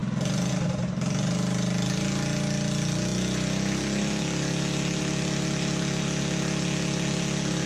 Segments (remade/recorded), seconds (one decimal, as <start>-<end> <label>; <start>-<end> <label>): 0.0-7.7 recorded